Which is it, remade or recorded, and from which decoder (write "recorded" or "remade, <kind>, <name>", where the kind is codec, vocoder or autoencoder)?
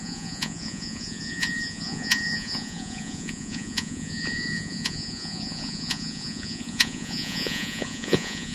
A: remade, vocoder, Vocos